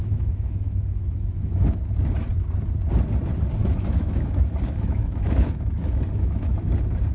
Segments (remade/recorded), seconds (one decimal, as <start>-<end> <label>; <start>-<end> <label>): 0.0-1.8 remade; 1.8-3.6 recorded; 3.6-6.6 remade; 6.6-7.1 recorded